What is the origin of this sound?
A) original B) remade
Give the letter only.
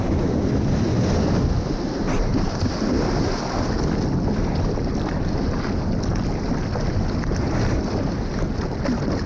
A